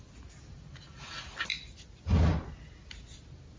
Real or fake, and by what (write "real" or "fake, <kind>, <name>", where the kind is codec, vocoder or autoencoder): real